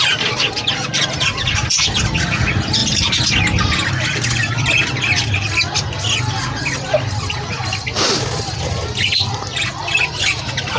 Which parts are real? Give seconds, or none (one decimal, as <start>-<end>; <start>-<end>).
0.0-10.8

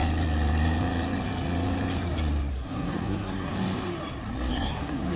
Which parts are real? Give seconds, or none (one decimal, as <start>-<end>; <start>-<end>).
0.0-2.5; 3.5-4.5